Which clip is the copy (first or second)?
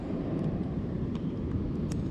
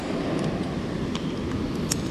first